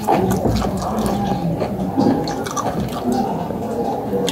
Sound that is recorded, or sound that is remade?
recorded